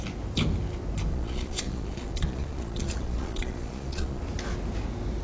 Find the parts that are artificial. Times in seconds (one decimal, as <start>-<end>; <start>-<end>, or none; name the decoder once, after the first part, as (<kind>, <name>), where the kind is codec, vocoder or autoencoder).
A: 1.1-4.2 (vocoder, Vocos)